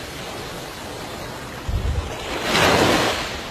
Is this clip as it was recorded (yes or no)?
no